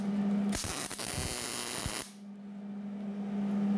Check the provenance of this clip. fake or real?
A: real